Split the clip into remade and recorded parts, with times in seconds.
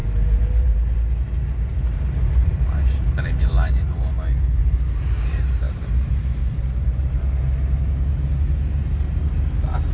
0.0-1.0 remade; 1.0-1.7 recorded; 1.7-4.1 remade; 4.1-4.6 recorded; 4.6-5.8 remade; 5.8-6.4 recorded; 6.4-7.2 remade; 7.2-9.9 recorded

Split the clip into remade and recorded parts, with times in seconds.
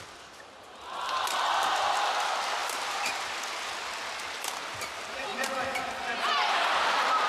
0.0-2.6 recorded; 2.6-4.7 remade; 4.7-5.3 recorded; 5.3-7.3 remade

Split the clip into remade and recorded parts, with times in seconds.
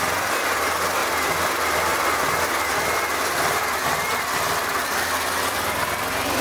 0.0-6.4 recorded